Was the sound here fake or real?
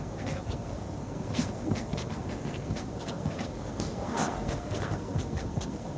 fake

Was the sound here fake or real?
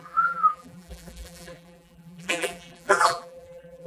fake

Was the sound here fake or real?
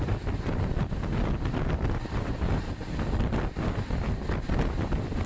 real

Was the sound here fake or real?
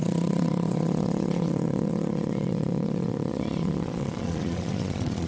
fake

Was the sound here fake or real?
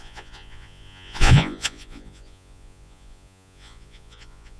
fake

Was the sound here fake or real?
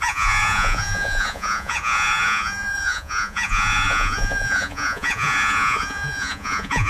fake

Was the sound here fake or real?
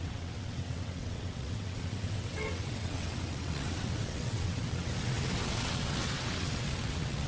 fake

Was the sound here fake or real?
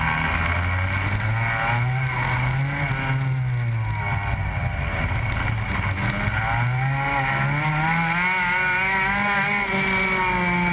real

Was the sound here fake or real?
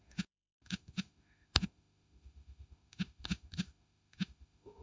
fake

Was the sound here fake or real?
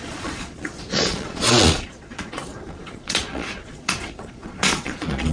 fake